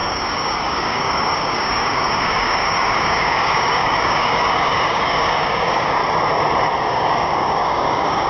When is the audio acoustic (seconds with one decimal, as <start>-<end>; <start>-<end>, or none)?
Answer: 6.0-6.8